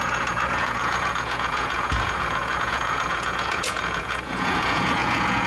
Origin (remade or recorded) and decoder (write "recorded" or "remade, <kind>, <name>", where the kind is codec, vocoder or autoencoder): remade, vocoder, Vocos